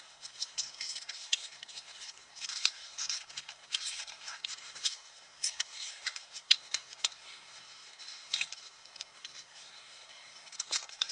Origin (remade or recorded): remade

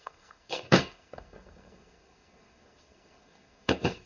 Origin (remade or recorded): remade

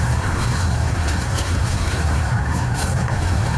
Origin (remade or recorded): remade